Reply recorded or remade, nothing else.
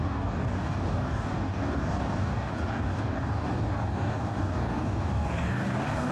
remade